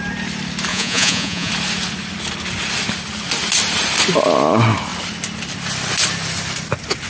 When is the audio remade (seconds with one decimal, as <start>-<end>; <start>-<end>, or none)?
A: 0.7-1.5